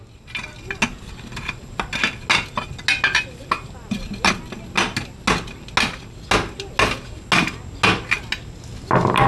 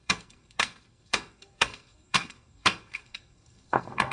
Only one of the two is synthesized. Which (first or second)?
second